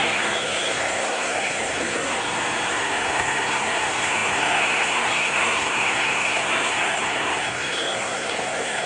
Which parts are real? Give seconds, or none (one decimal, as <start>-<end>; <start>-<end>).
2.2-2.7